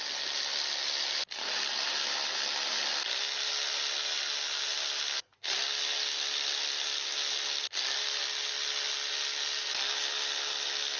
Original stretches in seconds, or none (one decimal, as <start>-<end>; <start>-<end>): 0.0-11.0